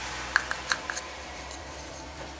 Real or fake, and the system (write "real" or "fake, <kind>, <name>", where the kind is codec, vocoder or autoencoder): fake, vocoder, BigVGAN v2